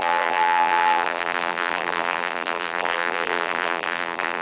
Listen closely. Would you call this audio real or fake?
fake